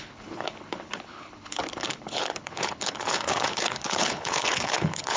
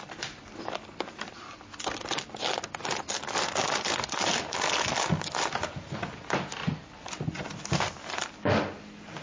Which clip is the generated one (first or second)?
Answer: first